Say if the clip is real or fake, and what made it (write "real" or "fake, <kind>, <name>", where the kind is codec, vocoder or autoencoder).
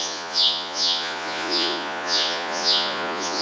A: fake, vocoder, Vocos